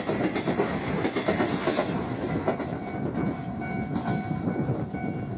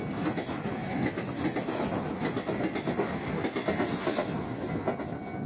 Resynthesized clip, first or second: first